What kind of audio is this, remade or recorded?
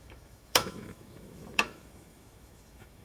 remade